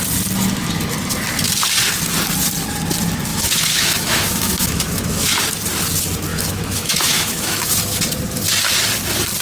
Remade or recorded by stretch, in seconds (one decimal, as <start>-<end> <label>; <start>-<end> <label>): 0.0-3.3 recorded; 3.3-5.3 remade; 5.3-6.3 recorded; 6.3-8.0 remade; 8.0-9.4 recorded

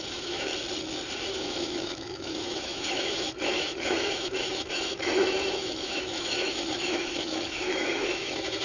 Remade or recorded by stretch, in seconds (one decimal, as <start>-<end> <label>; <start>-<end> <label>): 0.0-0.5 remade; 0.5-1.3 recorded; 1.3-8.6 remade

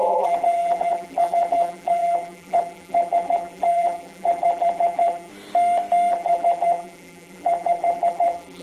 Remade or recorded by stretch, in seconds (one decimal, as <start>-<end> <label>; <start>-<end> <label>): 0.0-5.3 remade; 5.3-6.1 recorded; 6.1-8.6 remade

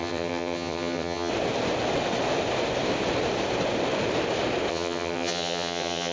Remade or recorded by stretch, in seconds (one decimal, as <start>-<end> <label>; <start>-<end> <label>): 0.0-1.3 remade; 1.3-4.7 recorded; 4.7-6.1 remade